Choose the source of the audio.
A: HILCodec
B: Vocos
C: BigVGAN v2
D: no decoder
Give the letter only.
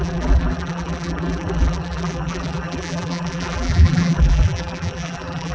C